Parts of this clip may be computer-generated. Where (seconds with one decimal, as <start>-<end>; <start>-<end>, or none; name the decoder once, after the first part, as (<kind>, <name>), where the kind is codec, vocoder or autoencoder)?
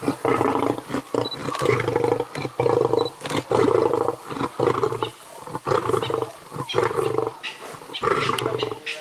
none